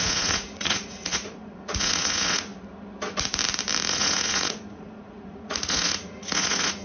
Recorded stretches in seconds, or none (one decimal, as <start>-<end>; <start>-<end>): 2.5-3.9